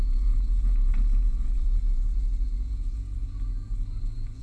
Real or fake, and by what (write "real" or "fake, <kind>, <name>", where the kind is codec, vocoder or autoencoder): fake, vocoder, Vocos